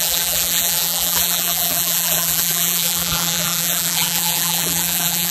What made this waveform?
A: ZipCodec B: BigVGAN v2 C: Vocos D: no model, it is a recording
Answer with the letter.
B